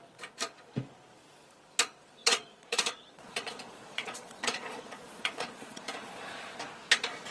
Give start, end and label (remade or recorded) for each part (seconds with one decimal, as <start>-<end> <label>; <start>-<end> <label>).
0.0-2.2 recorded; 2.2-6.6 remade; 6.6-7.3 recorded